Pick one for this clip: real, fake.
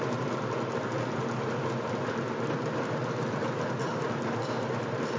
real